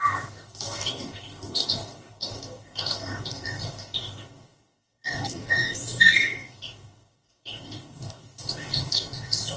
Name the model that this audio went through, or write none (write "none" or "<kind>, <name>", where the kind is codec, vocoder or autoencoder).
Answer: codec, DAC